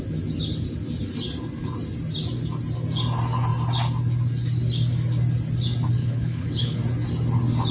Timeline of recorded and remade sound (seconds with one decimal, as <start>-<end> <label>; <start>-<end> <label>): 0.0-6.0 recorded; 6.0-6.8 remade; 6.8-7.7 recorded